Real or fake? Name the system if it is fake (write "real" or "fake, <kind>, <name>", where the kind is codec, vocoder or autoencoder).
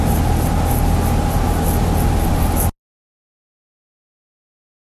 real